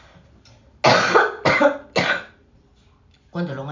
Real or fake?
real